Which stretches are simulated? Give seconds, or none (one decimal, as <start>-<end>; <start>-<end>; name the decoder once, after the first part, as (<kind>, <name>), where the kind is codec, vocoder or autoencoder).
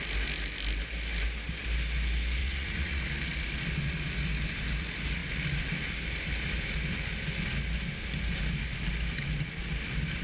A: 2.4-3.0 (vocoder, Vocos)